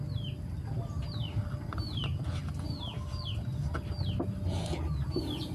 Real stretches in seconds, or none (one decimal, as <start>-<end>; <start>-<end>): 0.0-5.5